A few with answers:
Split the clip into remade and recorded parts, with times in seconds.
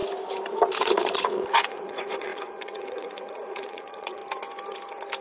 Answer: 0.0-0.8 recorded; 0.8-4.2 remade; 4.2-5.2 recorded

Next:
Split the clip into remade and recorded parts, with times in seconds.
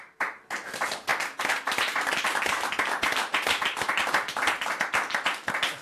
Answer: 0.0-1.1 recorded; 1.1-4.0 remade; 4.0-5.8 recorded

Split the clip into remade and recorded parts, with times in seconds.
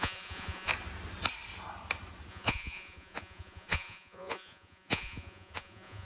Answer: 0.0-0.7 remade; 0.7-2.3 recorded; 2.3-6.0 remade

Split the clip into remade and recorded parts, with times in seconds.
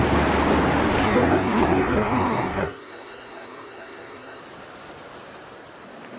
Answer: 0.0-1.0 recorded; 1.0-4.4 remade; 4.4-6.2 recorded